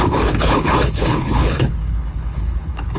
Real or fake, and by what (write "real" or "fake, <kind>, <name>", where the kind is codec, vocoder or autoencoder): fake, codec, HILCodec